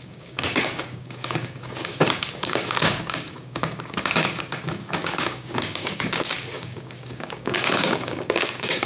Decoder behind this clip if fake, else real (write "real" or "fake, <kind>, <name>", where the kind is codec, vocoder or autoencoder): fake, codec, DAC